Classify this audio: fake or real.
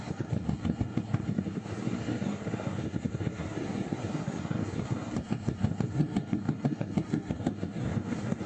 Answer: fake